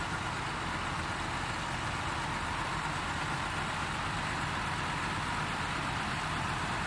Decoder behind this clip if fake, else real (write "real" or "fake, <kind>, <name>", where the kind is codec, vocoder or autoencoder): real